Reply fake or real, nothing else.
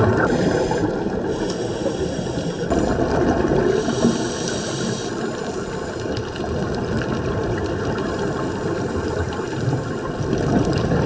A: real